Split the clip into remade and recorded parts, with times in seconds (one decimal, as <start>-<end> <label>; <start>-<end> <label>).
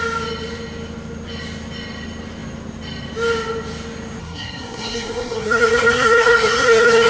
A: 0.0-4.2 recorded; 4.2-7.1 remade